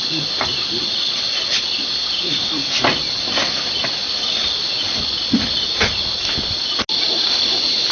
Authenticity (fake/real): real